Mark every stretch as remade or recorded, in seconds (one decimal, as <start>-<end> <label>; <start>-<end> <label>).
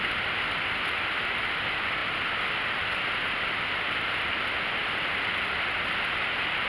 0.0-6.7 recorded